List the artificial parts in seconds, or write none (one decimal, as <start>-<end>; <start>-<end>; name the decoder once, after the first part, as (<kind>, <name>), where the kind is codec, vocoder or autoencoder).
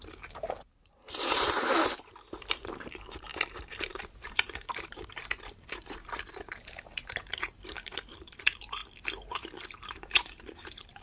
0.0-8.8 (vocoder, BigVGAN v2); 9.3-11.0